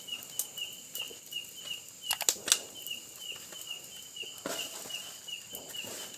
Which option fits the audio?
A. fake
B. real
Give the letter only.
B